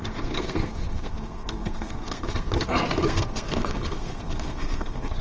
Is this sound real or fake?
fake